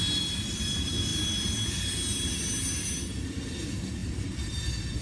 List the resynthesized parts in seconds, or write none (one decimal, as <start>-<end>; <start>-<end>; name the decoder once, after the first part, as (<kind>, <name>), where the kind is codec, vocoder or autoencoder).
4.0-5.0 (vocoder, BigVGAN v2)

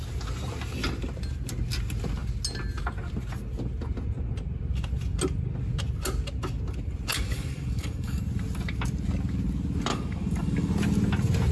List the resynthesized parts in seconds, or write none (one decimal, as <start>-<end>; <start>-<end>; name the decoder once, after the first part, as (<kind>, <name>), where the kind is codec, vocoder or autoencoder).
7.1-8.2 (codec, DAC); 9.9-10.7

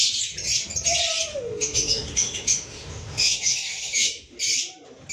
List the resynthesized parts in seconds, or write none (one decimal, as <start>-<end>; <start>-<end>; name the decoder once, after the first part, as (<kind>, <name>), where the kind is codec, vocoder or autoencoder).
1.3-4.4 (autoencoder, DAC-VAE)

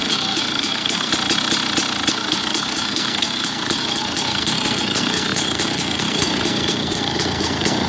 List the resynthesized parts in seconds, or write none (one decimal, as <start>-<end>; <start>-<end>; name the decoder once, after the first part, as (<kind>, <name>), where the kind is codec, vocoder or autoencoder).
0.0-1.1 (codec, SNAC); 2.1-7.9

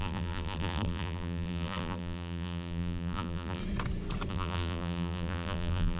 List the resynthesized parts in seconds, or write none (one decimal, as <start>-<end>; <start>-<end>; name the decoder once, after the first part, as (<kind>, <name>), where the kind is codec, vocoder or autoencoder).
0.0-3.6 (vocoder, BigVGAN v2); 4.3-6.0

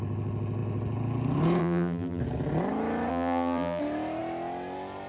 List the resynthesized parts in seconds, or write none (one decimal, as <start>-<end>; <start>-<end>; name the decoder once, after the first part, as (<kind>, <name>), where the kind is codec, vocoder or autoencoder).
1.6-2.2 (vocoder, BigVGAN v2); 3.1-3.8